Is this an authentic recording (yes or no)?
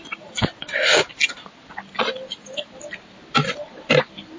yes